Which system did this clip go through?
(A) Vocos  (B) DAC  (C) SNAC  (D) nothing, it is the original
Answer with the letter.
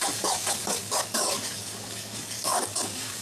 B